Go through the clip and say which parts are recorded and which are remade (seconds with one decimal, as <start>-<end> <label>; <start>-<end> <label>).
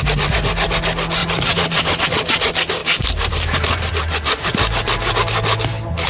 0.0-1.2 recorded; 1.2-2.0 remade; 2.0-2.8 recorded; 2.8-5.2 remade; 5.2-6.1 recorded